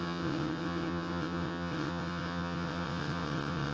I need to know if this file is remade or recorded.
remade